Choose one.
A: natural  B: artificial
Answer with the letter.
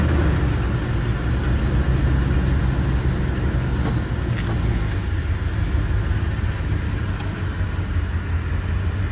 A